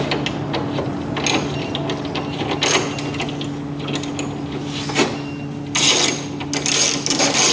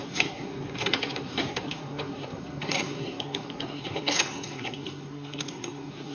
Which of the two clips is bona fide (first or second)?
first